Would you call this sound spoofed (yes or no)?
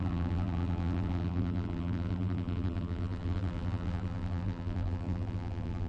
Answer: yes